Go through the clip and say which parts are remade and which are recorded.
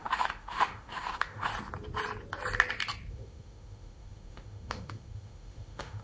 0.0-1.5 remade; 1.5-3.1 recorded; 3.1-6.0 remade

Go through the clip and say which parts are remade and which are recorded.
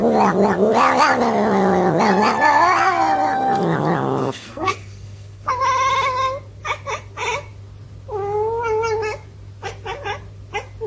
0.0-4.2 recorded; 4.2-5.5 remade; 5.5-10.9 recorded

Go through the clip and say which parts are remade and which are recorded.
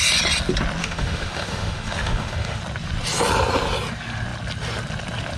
0.0-0.8 recorded; 0.8-2.6 remade; 2.6-5.4 recorded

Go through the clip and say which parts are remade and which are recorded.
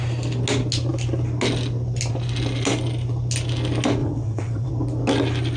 0.0-4.0 recorded; 4.0-4.7 remade; 4.7-5.6 recorded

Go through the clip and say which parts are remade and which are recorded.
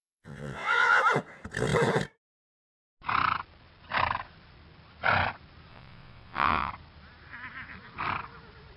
0.0-1.0 remade; 1.0-5.7 recorded; 5.7-6.7 remade; 6.7-8.8 recorded